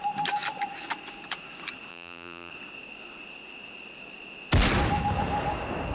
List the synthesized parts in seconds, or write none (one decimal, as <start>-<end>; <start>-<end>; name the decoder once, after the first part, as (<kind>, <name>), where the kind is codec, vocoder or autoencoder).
1.9-2.5 (vocoder, BigVGAN v2)